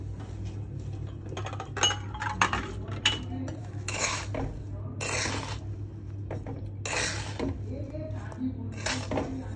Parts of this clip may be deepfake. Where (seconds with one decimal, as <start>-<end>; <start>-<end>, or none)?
3.6-4.2